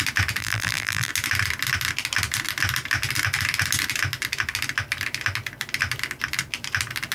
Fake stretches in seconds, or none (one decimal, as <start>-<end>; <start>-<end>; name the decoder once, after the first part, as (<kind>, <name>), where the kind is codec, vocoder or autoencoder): 0.4-1.1 (vocoder, BigVGAN v2)